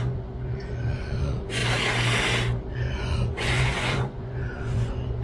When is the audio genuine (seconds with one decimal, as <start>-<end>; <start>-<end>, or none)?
1.6-2.7

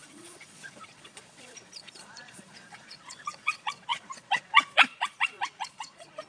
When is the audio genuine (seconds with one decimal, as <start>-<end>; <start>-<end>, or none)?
none

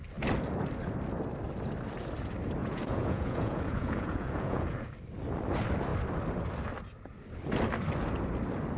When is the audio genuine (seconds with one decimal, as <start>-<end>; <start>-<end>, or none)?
0.0-2.6; 4.9-8.8

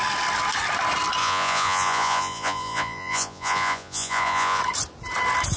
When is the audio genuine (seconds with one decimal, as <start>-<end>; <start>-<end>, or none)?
0.0-1.2; 4.6-5.6

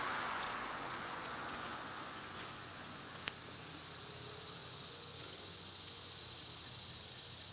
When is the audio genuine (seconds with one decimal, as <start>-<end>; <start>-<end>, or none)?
3.3-4.6; 6.2-7.5

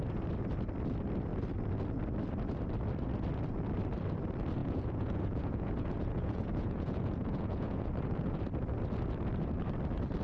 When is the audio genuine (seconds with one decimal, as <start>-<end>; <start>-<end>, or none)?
0.0-4.6; 8.4-10.2